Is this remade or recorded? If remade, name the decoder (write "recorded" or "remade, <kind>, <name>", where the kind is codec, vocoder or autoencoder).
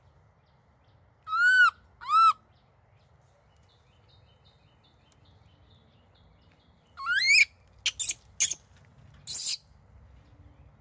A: recorded